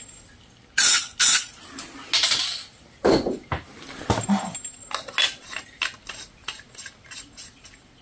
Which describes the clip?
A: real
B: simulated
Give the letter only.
A